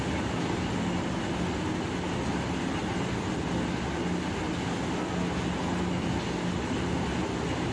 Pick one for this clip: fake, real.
real